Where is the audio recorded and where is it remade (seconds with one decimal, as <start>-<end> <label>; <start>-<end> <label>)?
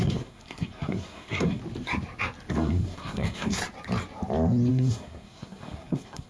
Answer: 0.0-1.6 remade; 1.6-2.5 recorded; 2.5-3.6 remade; 3.6-4.7 recorded; 4.7-6.3 remade